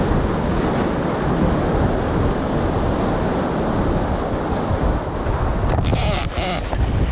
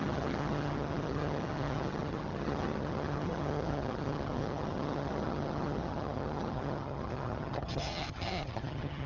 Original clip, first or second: first